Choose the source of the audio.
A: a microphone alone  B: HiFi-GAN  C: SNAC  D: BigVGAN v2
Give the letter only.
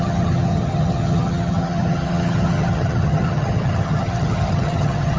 B